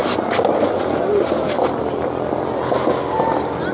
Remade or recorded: recorded